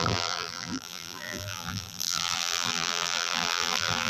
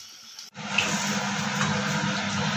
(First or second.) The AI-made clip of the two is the first